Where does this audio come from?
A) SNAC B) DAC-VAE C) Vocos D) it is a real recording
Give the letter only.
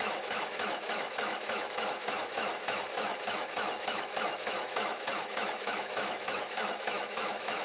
B